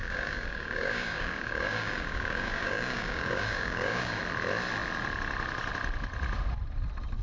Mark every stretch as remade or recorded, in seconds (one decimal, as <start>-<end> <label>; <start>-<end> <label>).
0.0-4.2 remade; 4.2-7.2 recorded